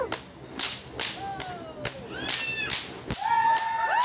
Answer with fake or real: real